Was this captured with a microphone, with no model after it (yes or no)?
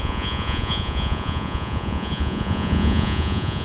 no